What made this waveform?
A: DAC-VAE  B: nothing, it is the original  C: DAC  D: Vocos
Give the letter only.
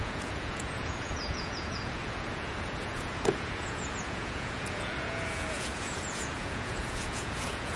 D